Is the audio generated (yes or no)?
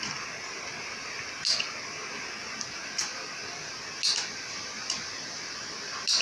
no